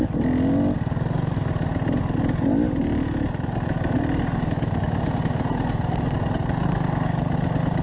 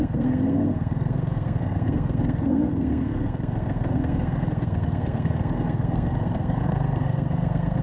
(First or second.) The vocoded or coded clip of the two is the second